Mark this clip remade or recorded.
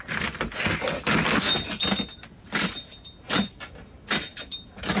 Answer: recorded